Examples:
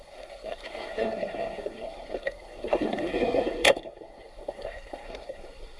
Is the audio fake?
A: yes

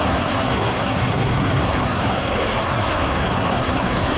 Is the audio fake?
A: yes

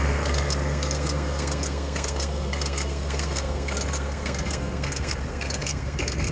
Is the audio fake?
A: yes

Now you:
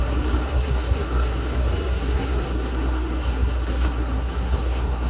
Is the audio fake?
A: yes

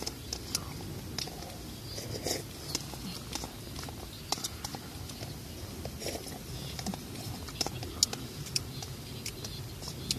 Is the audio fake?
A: no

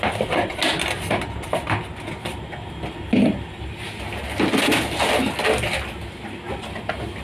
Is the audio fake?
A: no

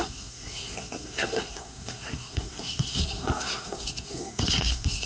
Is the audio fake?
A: yes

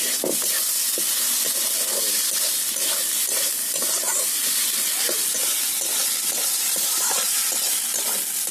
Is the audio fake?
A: no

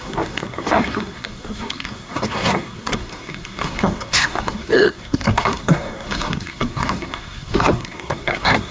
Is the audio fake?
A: yes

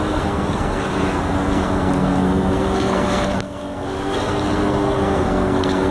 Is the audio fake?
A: yes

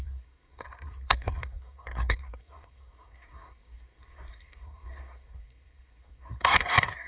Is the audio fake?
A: yes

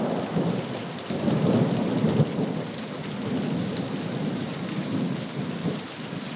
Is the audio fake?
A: no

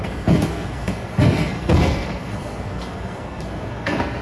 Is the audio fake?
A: yes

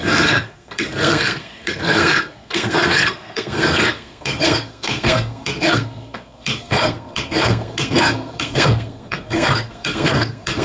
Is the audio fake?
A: yes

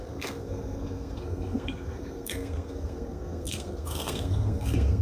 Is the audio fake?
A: yes